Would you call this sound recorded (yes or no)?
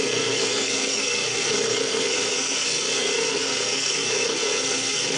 no